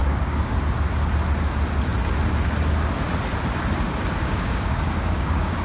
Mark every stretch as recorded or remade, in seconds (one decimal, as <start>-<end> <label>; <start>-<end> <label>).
0.0-0.6 remade; 0.6-4.2 recorded; 4.2-5.6 remade